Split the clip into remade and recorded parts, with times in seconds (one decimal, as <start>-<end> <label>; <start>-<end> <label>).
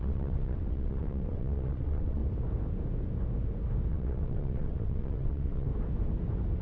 0.0-2.2 remade; 2.2-3.9 recorded; 3.9-5.7 remade; 5.7-6.6 recorded